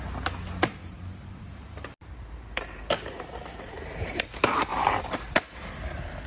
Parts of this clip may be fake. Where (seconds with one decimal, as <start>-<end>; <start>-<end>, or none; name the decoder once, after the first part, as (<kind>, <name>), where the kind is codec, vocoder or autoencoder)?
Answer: 0.8-4.2 (vocoder, BigVGAN v2); 4.7-5.7